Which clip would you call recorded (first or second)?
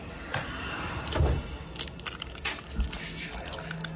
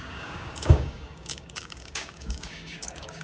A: first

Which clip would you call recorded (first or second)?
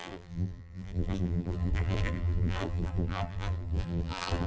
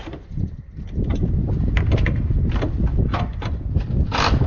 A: second